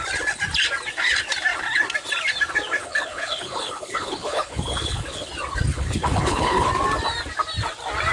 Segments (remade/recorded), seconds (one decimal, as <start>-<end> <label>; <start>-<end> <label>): 0.0-2.8 recorded; 2.8-5.3 remade; 5.3-5.7 recorded; 5.7-6.7 remade; 6.7-8.1 recorded